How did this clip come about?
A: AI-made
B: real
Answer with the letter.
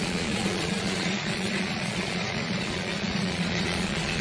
A